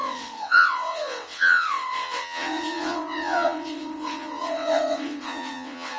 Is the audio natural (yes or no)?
no